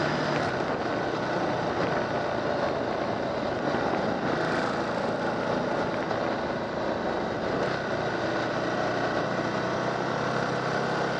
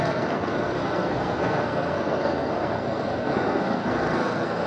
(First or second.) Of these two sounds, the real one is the first